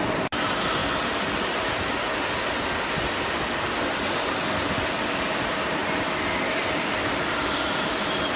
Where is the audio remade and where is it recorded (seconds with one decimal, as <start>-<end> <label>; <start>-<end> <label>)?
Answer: 0.0-8.4 recorded